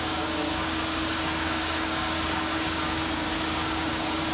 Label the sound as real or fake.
fake